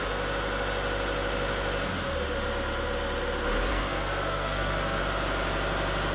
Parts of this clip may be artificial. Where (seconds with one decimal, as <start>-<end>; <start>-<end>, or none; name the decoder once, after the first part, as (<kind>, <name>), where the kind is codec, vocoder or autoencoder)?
3.7-5.0 (codec, SNAC)